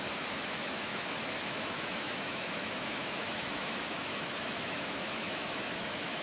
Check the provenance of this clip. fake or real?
fake